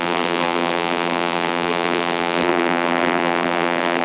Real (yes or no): no